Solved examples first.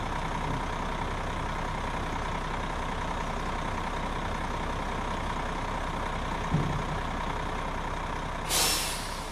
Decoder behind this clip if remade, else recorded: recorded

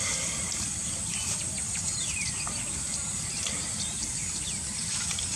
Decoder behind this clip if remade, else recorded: remade, vocoder, BigVGAN v2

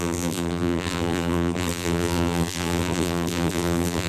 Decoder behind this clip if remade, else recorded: remade, vocoder, BigVGAN v2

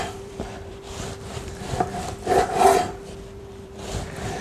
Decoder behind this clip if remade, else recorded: remade, vocoder, BigVGAN v2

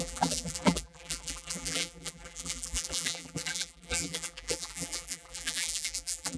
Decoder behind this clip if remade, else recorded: remade, vocoder, BigVGAN v2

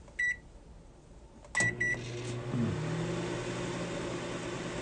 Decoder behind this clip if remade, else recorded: recorded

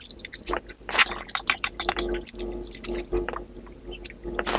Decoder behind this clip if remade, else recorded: remade, vocoder, BigVGAN v2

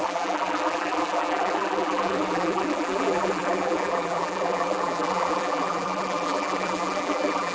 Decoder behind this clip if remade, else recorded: remade, vocoder, BigVGAN v2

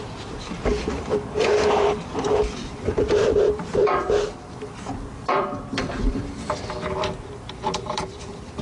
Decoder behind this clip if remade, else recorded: remade, vocoder, BigVGAN v2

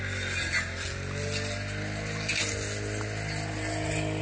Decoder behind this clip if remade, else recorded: recorded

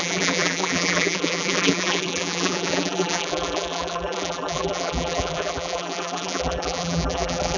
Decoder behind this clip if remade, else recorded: remade, vocoder, BigVGAN v2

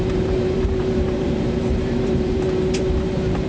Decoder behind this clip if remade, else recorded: remade, vocoder, BigVGAN v2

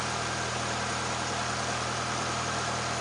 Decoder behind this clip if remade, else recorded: recorded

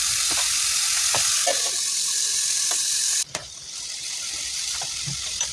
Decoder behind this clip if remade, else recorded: remade, vocoder, BigVGAN v2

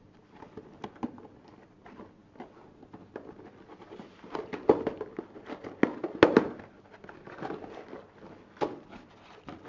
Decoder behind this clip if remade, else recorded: recorded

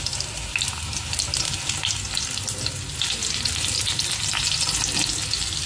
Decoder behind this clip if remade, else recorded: recorded